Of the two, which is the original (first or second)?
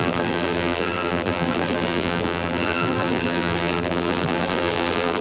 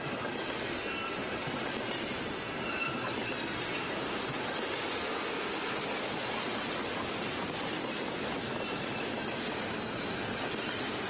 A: second